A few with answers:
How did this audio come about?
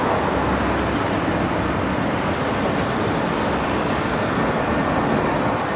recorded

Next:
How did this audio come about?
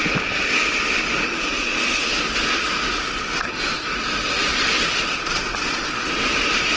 recorded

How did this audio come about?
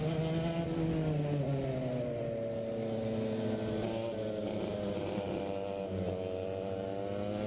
recorded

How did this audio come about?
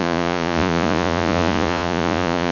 remade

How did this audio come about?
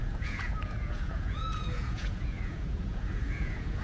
remade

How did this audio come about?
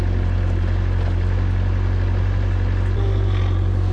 recorded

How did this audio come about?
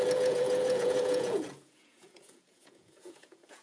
remade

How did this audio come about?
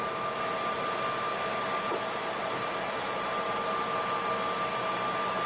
recorded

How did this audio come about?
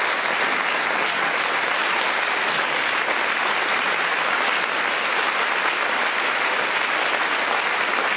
recorded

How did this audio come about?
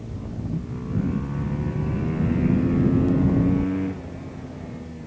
recorded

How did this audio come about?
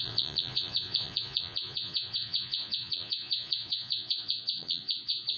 remade